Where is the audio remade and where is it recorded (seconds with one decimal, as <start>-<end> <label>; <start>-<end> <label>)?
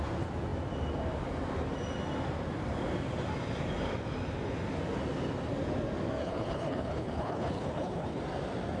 0.0-6.2 recorded; 6.2-8.2 remade; 8.2-8.8 recorded